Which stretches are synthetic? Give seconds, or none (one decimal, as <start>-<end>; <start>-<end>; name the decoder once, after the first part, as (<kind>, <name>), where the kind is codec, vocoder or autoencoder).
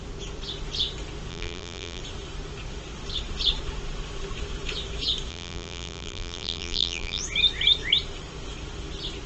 1.3-2.0 (vocoder, BigVGAN v2); 5.3-7.2